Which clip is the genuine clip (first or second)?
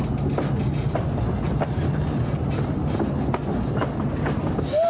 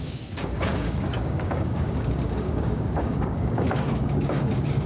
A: first